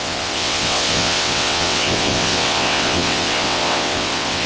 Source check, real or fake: fake